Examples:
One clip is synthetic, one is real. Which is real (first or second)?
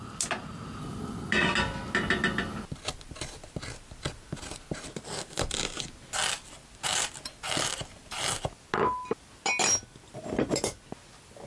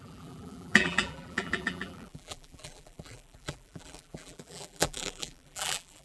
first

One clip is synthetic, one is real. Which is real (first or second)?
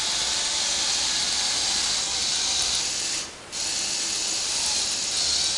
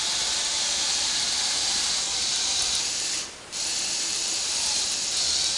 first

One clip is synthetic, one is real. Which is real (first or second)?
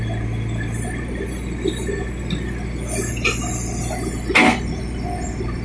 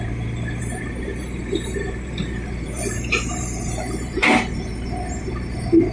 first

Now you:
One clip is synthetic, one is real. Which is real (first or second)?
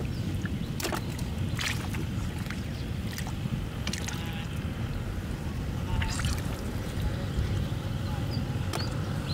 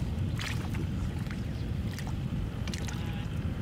first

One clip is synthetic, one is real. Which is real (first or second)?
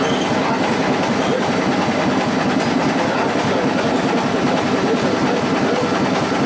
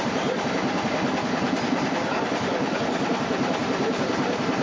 first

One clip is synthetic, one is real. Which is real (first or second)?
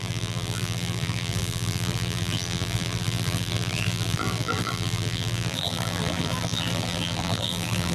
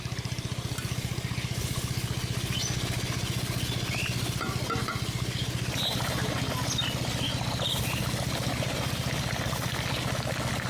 second